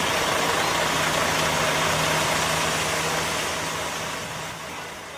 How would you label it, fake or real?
real